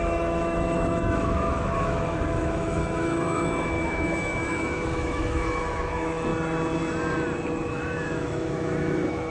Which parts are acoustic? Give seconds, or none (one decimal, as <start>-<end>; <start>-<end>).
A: 6.3-7.7